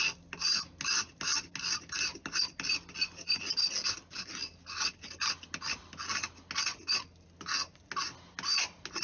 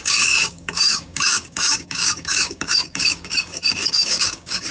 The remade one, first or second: second